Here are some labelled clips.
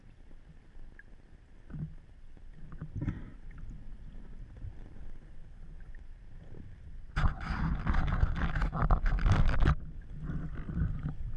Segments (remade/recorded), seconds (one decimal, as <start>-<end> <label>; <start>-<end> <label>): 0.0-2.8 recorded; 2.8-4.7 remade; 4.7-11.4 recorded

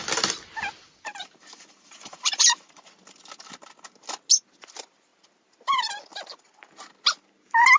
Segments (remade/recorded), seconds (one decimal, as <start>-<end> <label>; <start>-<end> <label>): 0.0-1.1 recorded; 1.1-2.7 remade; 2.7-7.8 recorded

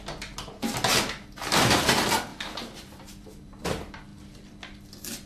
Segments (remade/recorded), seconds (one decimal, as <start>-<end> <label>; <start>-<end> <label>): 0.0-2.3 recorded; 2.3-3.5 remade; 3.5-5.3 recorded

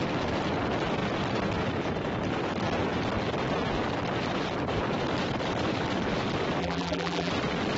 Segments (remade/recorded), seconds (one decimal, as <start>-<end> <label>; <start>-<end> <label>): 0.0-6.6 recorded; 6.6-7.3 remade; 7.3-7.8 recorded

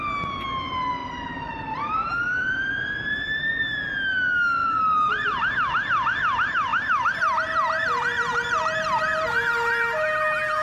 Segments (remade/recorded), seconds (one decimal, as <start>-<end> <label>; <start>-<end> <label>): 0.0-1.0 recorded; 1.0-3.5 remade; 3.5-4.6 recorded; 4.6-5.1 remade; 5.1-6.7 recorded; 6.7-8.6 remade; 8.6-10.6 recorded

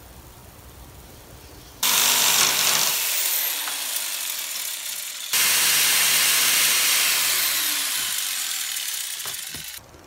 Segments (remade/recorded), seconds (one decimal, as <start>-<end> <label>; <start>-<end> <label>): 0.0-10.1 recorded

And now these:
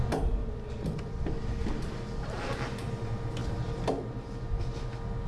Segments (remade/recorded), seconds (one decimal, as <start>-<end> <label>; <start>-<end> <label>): 0.0-5.3 recorded

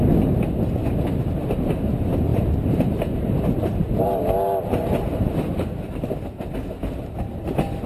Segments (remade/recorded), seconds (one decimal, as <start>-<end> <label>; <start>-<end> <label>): 0.0-0.8 recorded; 0.8-1.7 remade; 1.7-2.3 recorded; 2.3-4.2 remade; 4.2-4.7 recorded; 4.7-7.0 remade; 7.0-7.9 recorded